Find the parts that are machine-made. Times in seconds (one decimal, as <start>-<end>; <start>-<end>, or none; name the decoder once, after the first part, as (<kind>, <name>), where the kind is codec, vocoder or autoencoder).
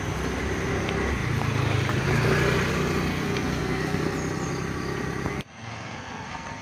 3.1-4.0 (codec, SNAC); 5.3-6.6